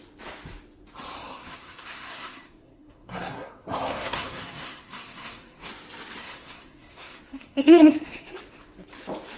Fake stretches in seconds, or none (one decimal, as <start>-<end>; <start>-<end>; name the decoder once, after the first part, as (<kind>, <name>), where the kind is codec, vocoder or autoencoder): 1.2-5.7 (codec, SNAC); 6.2-8.4

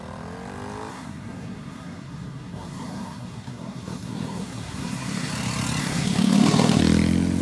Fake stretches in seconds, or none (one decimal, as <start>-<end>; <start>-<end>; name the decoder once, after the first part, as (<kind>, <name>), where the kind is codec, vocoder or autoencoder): 0.9-5.3 (codec, SNAC); 5.8-6.8

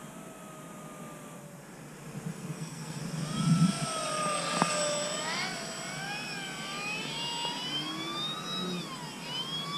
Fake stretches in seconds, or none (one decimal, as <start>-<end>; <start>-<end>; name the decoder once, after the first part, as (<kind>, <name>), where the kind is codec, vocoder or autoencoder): 2.3-3.0 (codec, SNAC)

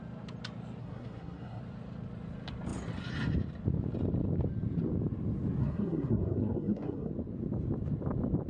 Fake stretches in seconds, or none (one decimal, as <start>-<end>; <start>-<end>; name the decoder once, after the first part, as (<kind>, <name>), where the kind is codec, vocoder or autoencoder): 0.8-1.6 (codec, SNAC); 5.6-7.1

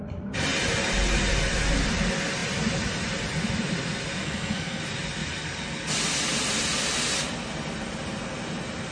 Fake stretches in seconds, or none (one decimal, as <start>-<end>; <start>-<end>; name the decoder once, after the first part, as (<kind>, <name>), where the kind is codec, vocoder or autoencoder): 4.2-4.8 (codec, SNAC)

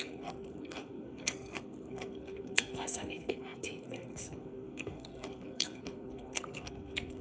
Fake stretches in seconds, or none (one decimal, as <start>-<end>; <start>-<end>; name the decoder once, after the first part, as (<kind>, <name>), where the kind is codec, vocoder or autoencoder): 0.0-7.2 (codec, SNAC)

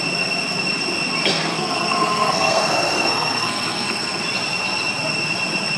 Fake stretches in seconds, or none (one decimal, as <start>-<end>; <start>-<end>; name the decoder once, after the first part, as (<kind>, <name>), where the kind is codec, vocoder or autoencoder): 1.3-4.2 (codec, SNAC)

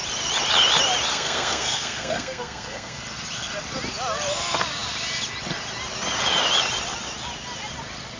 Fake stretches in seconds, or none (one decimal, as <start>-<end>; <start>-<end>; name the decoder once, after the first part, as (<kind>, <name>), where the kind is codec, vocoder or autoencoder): 1.1-3.0 (codec, SNAC)